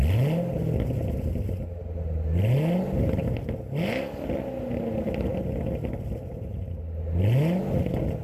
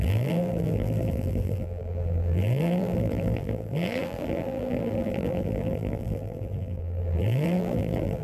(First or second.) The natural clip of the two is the first